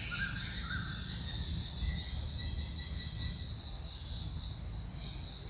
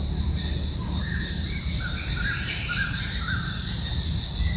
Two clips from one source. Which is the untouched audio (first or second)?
first